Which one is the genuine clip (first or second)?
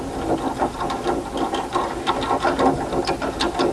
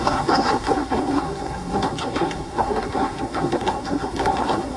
first